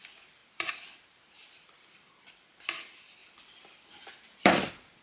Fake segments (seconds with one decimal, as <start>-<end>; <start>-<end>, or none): 3.2-4.5